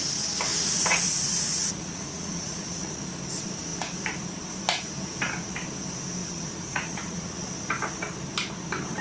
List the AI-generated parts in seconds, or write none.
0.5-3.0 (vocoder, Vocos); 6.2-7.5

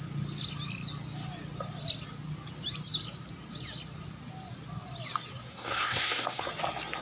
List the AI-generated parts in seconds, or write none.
5.5-6.4 (codec, SNAC)

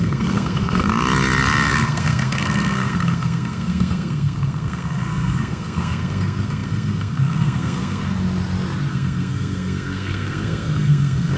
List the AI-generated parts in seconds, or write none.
0.0-0.9 (codec, SNAC); 1.7-8.0; 8.9-11.4

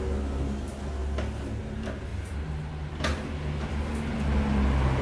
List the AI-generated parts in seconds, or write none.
none

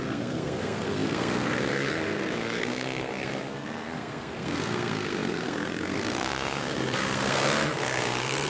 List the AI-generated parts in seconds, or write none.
0.0-8.5 (codec, SNAC)

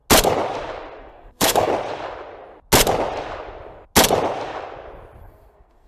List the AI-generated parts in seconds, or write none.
1.0-1.7 (codec, SNAC); 5.2-5.9

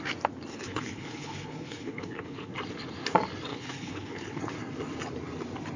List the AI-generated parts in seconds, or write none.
0.5-2.5 (codec, HILCodec); 3.5-4.4